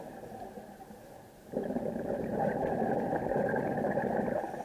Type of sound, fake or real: real